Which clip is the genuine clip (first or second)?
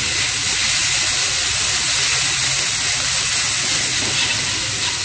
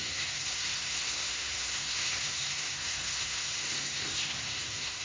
first